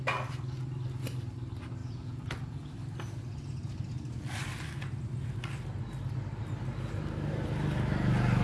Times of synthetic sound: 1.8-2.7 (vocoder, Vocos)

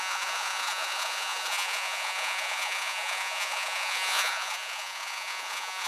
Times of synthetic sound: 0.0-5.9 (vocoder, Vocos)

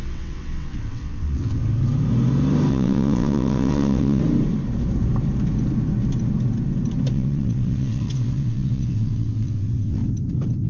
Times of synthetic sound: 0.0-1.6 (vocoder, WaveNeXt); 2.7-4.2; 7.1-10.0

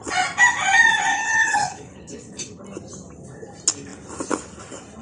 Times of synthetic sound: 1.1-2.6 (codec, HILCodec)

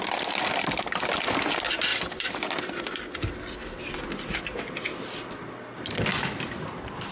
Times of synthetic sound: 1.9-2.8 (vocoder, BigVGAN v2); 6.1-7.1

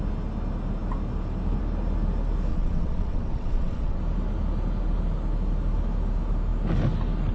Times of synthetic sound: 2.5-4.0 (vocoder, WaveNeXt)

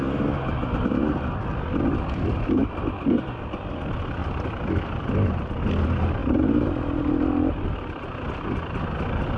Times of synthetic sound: 1.5-2.2 (vocoder, BigVGAN v2); 2.6-3.4; 4.2-5.6